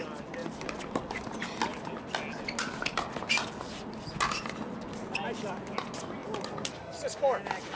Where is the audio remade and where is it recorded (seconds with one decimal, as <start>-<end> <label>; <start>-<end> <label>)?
0.0-7.8 recorded